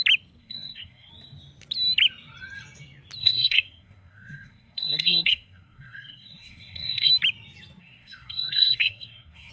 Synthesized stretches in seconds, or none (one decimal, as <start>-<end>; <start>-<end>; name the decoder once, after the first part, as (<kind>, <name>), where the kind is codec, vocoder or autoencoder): 0.4-1.1 (codec, SNAC); 3.2-7.1; 7.8-9.5